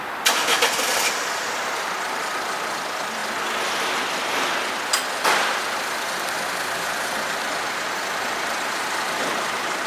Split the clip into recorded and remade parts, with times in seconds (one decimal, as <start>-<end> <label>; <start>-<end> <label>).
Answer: 0.0-9.9 recorded